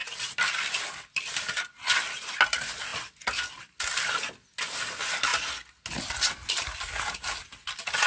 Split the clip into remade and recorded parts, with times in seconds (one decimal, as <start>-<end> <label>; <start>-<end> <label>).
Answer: 0.0-8.1 recorded